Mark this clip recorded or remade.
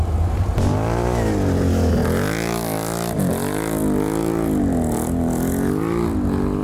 recorded